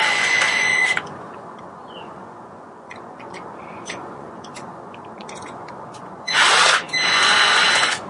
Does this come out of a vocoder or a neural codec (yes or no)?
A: yes